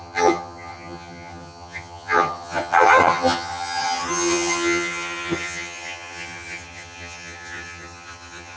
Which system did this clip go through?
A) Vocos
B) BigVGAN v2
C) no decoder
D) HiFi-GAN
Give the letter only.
D